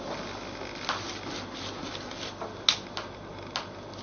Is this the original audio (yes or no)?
yes